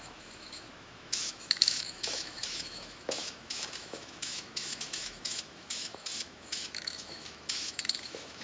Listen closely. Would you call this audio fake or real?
fake